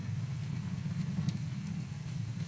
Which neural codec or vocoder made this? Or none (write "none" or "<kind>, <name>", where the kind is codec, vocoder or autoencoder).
codec, SNAC